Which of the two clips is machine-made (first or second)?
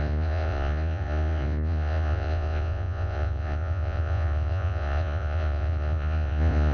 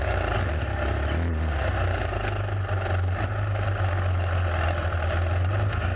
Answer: first